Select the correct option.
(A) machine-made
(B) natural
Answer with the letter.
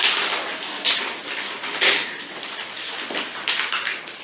B